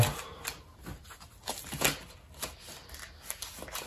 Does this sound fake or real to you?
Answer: real